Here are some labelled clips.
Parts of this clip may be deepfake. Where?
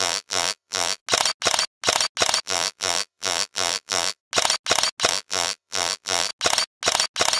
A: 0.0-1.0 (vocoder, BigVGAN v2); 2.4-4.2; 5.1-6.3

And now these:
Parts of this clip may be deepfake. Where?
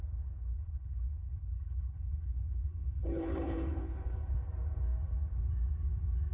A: 0.5-4.3 (codec, HILCodec)